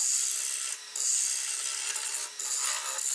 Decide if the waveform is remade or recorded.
recorded